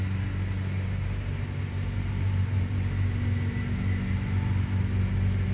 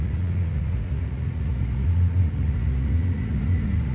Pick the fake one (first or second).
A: second